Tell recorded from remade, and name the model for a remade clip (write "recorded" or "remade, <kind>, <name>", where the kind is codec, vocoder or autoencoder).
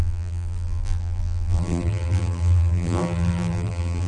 remade, vocoder, BigVGAN v2